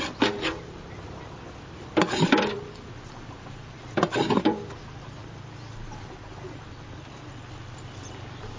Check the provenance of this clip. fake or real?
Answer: fake